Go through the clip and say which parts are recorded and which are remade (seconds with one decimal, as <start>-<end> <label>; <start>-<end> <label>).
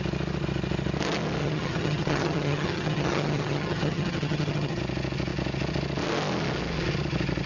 0.0-1.4 recorded; 1.4-4.8 remade; 4.8-7.5 recorded